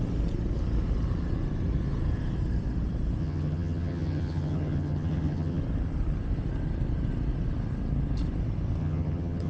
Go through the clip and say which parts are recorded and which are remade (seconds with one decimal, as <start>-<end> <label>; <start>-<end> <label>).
0.0-3.2 recorded; 3.2-5.6 remade; 5.6-8.8 recorded; 8.8-9.5 remade